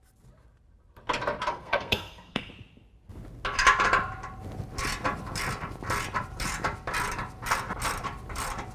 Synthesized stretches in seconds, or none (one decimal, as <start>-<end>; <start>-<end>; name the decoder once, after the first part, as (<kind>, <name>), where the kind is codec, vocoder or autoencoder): 1.5-2.5 (codec, SNAC)